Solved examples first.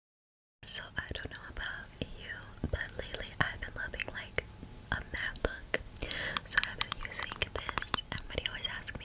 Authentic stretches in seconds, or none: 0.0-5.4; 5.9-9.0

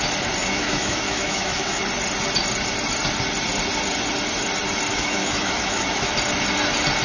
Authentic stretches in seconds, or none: 0.0-0.4; 1.8-4.9; 6.1-7.0

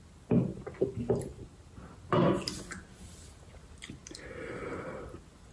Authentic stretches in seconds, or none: 0.0-5.5